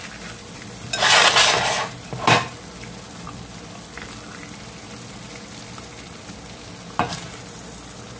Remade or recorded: recorded